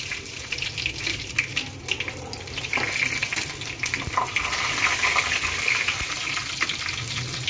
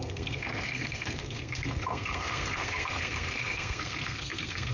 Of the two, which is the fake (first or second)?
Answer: second